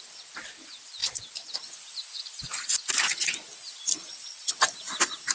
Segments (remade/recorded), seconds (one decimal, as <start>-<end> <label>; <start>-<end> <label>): 0.0-5.3 recorded